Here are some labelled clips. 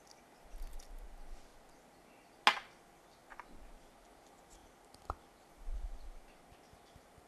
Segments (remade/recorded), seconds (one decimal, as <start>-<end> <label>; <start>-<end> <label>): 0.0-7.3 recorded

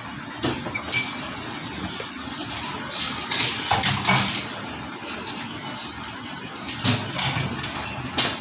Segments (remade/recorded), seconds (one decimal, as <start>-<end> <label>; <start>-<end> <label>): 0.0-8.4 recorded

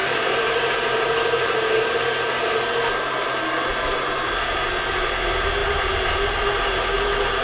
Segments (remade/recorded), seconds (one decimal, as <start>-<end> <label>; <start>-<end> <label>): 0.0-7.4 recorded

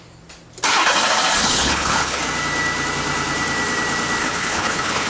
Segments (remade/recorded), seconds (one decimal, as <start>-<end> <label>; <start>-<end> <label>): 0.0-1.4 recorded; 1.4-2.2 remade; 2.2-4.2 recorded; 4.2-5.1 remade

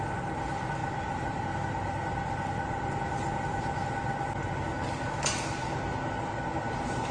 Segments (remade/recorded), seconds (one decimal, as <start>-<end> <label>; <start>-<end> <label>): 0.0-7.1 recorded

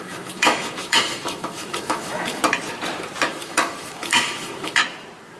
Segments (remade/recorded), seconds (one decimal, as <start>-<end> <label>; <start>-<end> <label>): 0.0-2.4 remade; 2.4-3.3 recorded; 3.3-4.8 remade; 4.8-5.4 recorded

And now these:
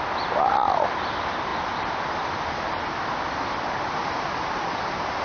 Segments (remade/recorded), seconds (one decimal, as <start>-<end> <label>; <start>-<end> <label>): 0.0-5.2 recorded